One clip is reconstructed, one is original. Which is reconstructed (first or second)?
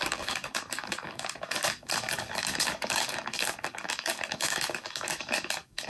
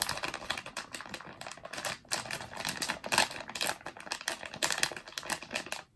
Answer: first